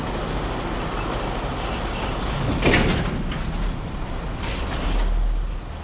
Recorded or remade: recorded